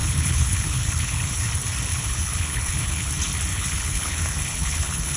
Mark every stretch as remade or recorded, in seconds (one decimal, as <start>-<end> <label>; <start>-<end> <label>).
0.0-1.5 remade; 1.5-1.9 recorded; 1.9-3.1 remade; 3.1-3.5 recorded; 3.5-5.2 remade